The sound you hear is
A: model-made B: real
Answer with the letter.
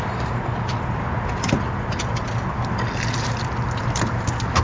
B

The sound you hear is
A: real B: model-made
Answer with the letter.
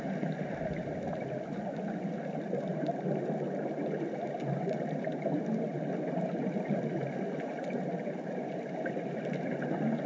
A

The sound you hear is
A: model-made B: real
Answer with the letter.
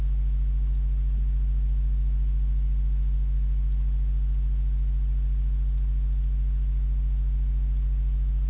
B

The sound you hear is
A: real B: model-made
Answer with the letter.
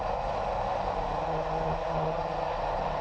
A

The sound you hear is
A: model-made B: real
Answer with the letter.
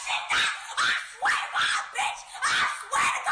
B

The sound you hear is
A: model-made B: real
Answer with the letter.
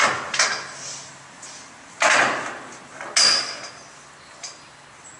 B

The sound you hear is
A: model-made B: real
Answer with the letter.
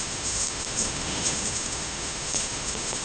A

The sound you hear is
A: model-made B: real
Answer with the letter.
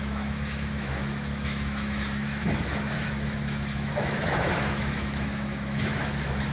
A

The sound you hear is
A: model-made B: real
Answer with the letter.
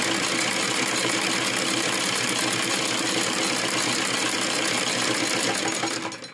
B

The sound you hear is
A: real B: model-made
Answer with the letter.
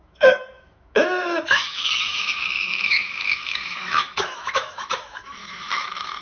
B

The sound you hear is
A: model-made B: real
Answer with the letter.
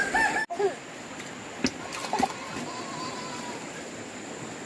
B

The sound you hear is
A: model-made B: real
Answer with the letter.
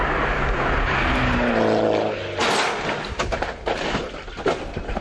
B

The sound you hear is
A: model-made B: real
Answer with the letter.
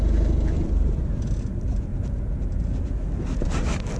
B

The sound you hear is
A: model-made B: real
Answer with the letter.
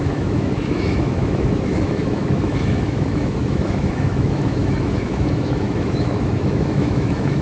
A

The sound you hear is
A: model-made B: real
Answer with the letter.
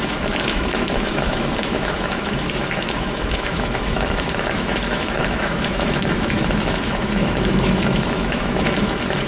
A